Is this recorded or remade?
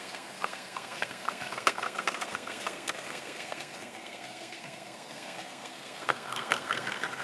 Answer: remade